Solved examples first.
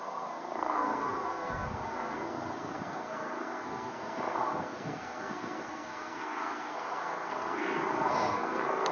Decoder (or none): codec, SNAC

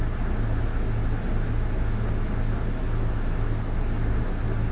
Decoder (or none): none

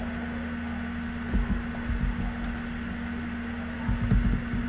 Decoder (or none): none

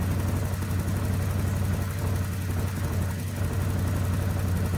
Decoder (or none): none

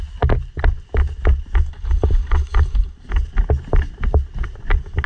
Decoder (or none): none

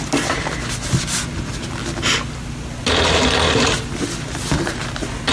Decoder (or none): none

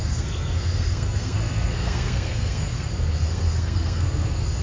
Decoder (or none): codec, SNAC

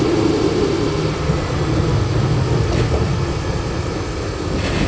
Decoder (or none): none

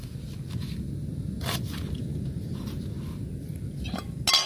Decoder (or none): none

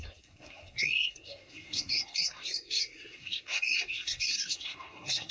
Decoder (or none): codec, SNAC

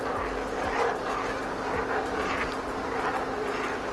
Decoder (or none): none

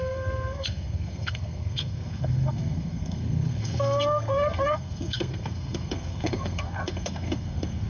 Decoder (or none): codec, SNAC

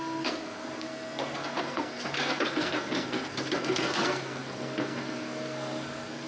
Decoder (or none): codec, SNAC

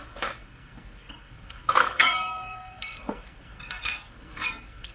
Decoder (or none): codec, SNAC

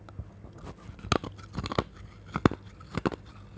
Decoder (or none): none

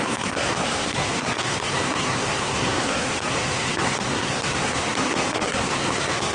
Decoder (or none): codec, SNAC